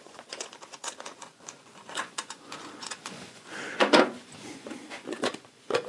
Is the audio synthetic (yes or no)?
yes